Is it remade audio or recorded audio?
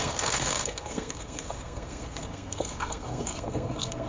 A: remade